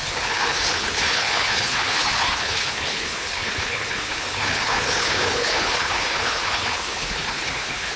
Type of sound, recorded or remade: remade